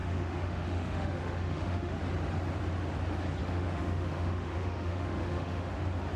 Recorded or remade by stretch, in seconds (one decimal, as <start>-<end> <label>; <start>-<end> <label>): 0.0-2.0 remade; 2.0-3.4 recorded; 3.4-5.7 remade; 5.7-6.2 recorded